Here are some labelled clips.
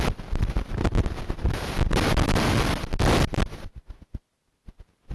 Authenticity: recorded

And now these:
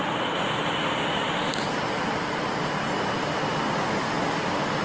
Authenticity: recorded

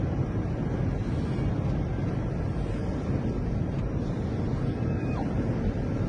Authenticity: recorded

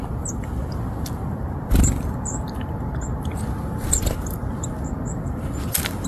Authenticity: recorded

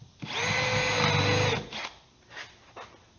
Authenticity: recorded